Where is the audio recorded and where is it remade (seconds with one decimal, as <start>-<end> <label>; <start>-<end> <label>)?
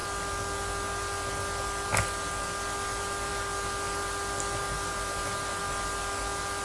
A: 0.0-6.6 recorded